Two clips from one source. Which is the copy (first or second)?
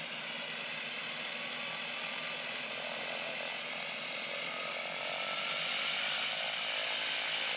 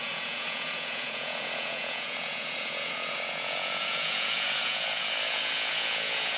second